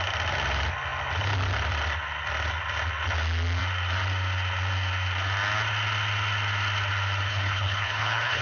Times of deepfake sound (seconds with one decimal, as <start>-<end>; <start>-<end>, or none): 7.3-8.4